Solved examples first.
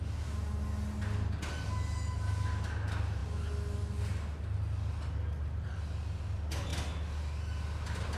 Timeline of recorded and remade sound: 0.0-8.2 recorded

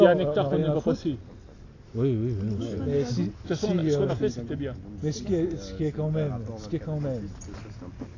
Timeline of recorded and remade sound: 0.0-8.2 recorded

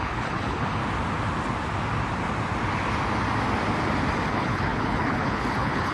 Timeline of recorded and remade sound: 0.0-0.8 remade; 0.8-4.3 recorded; 4.3-5.9 remade

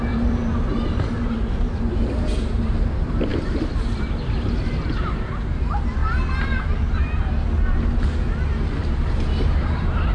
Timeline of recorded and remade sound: 0.0-6.0 remade; 6.0-8.8 recorded; 8.8-10.1 remade